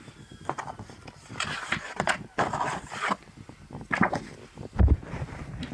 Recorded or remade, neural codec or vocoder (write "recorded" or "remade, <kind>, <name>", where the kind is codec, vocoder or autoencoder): recorded